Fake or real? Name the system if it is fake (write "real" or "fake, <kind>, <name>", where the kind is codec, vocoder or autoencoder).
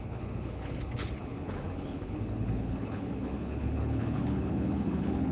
fake, codec, HILCodec